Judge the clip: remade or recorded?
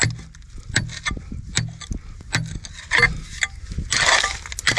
recorded